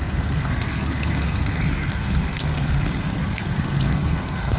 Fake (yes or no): yes